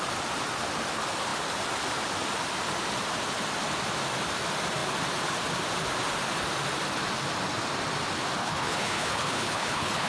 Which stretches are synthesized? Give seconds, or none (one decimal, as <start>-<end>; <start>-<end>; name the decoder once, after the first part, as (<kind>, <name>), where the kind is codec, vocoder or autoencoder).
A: 8.4-10.1 (codec, HILCodec)